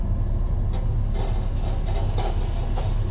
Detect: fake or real real